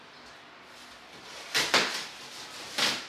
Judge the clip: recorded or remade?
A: recorded